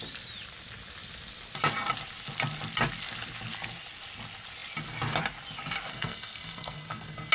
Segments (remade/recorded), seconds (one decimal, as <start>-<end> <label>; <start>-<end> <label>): 0.0-5.9 recorded; 5.9-7.3 remade